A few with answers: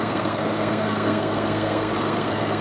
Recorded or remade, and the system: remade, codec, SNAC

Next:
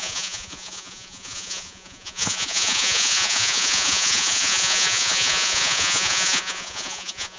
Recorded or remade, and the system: remade, vocoder, Vocos